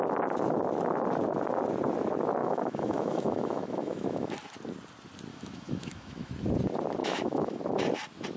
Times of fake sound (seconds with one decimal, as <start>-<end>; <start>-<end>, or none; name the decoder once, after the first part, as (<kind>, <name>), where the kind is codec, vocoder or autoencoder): 2.4-4.3 (autoencoder, DAC-VAE); 5.3-6.3; 7.0-7.6